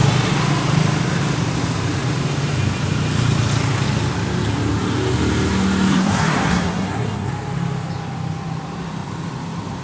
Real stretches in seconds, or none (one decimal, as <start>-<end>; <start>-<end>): 0.0-5.9; 7.3-9.8